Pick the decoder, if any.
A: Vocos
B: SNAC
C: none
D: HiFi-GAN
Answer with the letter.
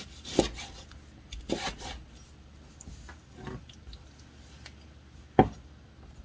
C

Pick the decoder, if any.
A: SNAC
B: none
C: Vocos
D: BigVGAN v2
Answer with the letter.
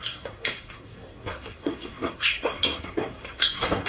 A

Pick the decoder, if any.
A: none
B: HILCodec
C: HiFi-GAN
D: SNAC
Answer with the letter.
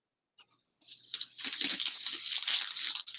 A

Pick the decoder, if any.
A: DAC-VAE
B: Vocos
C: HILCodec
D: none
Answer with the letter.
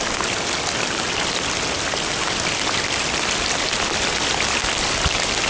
D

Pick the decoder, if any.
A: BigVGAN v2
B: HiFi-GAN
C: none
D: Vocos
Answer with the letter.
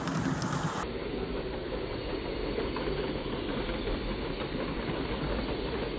C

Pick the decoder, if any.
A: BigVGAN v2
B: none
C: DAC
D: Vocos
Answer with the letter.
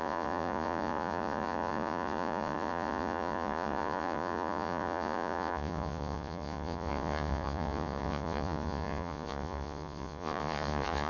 D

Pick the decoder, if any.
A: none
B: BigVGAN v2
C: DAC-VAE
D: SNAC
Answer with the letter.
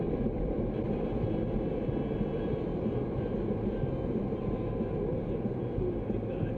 A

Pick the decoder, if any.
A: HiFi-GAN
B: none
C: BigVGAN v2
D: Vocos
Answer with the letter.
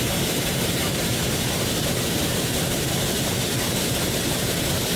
C